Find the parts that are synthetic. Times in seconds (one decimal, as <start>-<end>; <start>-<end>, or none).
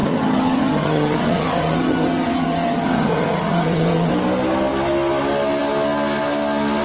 0.0-4.1